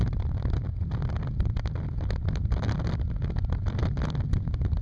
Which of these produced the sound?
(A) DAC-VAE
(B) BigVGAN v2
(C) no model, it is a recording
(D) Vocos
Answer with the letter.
C